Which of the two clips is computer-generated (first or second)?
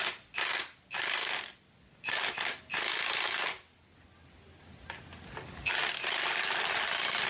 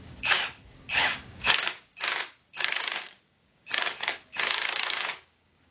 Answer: second